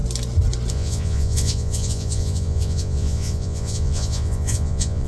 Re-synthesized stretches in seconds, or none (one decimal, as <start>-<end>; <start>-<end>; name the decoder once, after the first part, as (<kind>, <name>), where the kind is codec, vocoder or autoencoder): 0.7-5.1 (vocoder, Vocos)